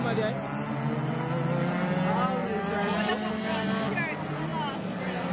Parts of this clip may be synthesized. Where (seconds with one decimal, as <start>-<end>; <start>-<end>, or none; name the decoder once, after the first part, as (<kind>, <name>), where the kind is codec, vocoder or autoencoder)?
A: 2.4-3.1 (vocoder, BigVGAN v2)